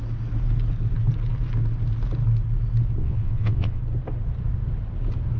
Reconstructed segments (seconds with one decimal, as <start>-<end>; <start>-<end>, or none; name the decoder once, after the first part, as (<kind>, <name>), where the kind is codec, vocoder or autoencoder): 3.0-3.8 (vocoder, WaveNeXt)